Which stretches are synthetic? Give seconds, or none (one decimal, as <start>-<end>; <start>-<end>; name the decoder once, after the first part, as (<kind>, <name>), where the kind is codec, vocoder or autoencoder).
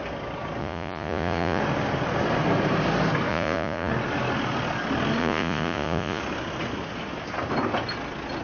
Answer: 0.6-1.6 (vocoder, Vocos); 3.3-3.9; 5.2-6.2